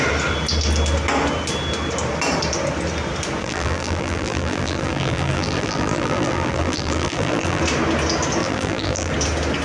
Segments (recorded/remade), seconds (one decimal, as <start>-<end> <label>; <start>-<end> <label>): 0.0-3.4 recorded; 3.4-7.6 remade; 7.6-8.4 recorded; 8.4-9.1 remade; 9.1-9.6 recorded